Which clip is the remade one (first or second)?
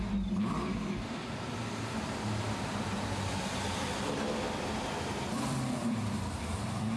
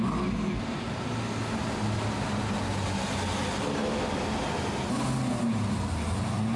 first